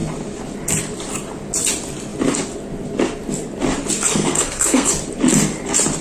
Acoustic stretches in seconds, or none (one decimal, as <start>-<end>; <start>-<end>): 0.0-4.1; 4.9-6.0